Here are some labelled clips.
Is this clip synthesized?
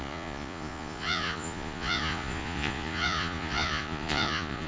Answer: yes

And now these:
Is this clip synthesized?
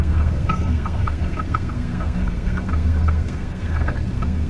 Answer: yes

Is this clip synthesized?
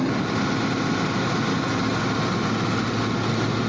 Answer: no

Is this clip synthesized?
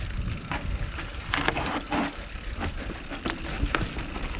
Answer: no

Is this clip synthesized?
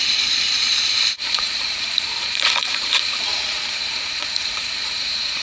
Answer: yes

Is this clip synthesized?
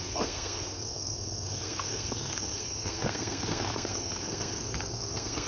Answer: yes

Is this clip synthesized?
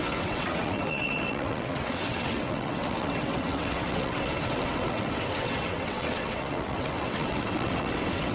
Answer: yes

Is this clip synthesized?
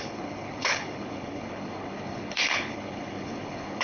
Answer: yes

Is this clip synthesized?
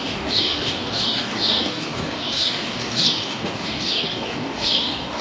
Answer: yes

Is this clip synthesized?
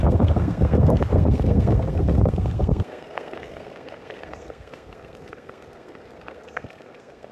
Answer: yes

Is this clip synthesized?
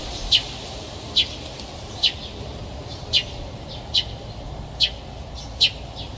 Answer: no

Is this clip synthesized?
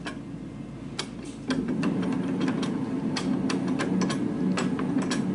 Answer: no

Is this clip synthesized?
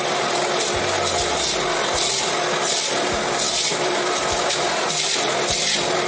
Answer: no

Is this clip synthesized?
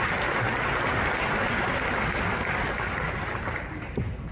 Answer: no